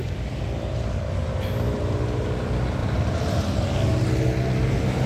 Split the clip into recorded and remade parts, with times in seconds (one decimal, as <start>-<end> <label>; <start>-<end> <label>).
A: 0.0-2.8 recorded; 2.8-3.4 remade; 3.4-5.1 recorded